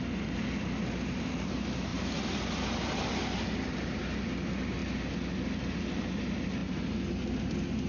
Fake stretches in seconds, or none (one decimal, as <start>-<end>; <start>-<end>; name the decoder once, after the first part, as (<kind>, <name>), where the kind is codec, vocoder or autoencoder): 1.9-4.0 (vocoder, BigVGAN v2)